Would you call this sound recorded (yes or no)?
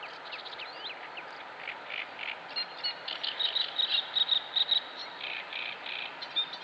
yes